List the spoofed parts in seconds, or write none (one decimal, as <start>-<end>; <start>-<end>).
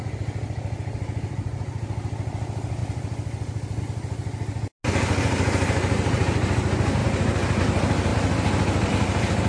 none